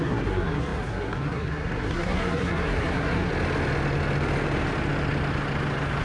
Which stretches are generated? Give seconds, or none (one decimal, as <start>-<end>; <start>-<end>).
0.0-3.3